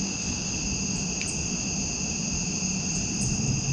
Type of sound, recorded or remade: recorded